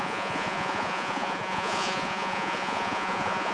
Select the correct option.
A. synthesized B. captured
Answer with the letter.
A